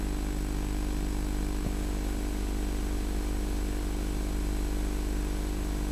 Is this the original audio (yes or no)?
yes